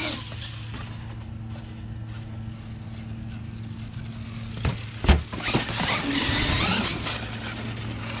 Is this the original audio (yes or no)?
yes